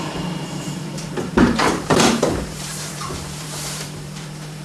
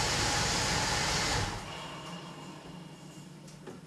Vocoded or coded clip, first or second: first